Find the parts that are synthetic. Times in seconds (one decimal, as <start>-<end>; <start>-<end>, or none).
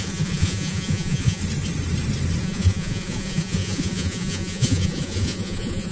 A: 0.0-1.4; 2.4-5.9